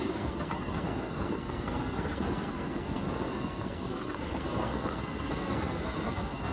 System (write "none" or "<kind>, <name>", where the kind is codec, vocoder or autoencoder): codec, SNAC